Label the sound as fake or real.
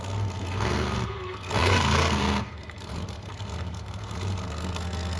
fake